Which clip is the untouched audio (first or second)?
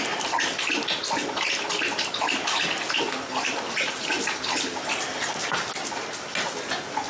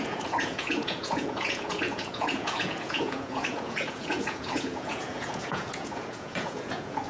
first